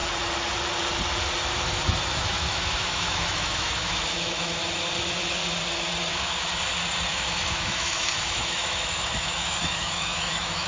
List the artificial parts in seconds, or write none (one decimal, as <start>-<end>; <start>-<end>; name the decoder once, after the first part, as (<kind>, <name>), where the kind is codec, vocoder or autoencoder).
2.2-4.6 (autoencoder, DAC-VAE); 6.1-6.5; 7.1-10.7